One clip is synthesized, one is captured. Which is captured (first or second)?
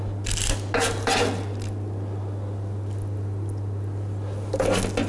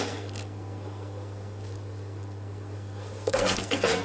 first